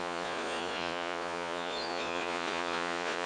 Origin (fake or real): fake